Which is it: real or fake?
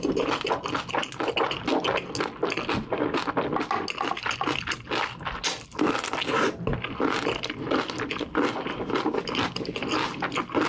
real